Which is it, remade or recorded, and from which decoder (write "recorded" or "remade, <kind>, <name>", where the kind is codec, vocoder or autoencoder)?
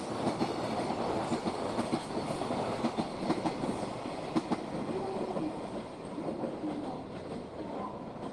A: recorded